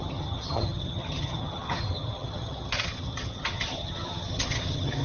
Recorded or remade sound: remade